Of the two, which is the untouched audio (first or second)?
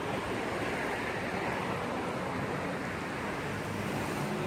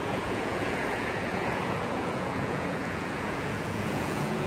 first